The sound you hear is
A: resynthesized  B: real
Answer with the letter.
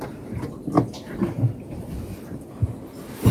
B